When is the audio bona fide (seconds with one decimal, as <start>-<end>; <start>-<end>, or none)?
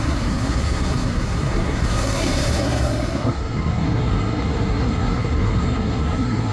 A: none